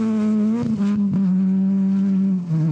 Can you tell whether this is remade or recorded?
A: recorded